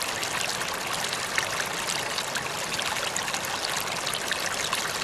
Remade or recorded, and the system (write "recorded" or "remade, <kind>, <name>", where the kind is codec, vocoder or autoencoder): recorded